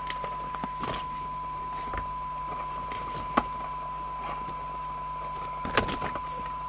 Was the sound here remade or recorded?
recorded